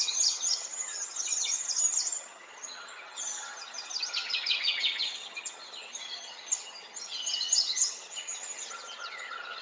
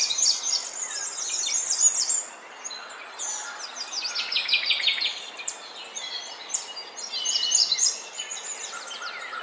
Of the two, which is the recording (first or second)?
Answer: second